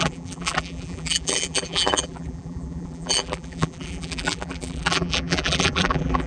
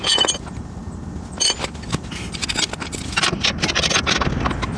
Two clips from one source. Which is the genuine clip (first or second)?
second